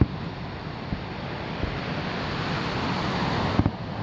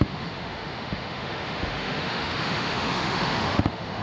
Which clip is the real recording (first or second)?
first